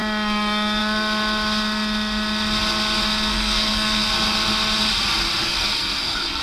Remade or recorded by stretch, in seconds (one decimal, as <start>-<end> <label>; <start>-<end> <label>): 0.0-3.3 recorded; 3.3-4.1 remade; 4.1-5.4 recorded; 5.4-6.4 remade